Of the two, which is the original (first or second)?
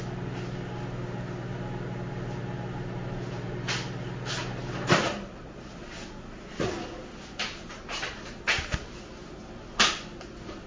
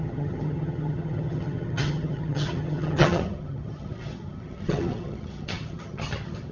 first